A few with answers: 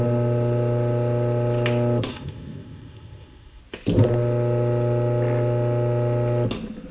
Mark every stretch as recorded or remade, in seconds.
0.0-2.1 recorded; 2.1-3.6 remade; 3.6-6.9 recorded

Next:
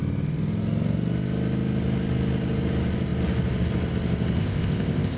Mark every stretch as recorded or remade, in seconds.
0.0-4.4 recorded; 4.4-5.2 remade

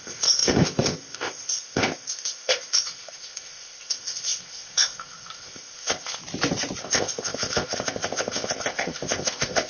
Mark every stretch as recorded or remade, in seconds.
0.0-6.2 remade; 6.2-6.8 recorded; 6.8-9.7 remade

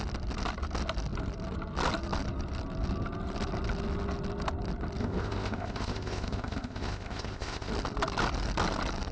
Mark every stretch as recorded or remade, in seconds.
0.0-5.0 recorded; 5.0-7.7 remade; 7.7-9.1 recorded

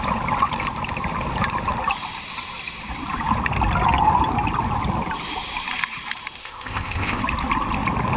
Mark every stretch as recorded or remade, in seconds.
0.0-6.4 recorded; 6.4-7.2 remade; 7.2-8.2 recorded

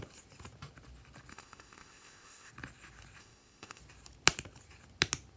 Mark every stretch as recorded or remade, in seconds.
0.0-1.3 recorded; 1.3-2.5 remade; 2.5-3.2 recorded; 3.2-3.8 remade; 3.8-5.4 recorded

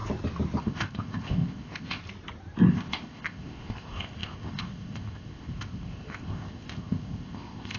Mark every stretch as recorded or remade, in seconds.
0.0-0.6 recorded; 0.6-2.0 remade; 2.0-2.7 recorded; 2.7-7.8 remade